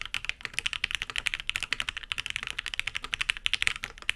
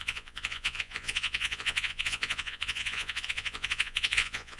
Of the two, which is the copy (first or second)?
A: second